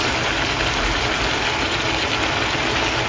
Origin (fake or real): real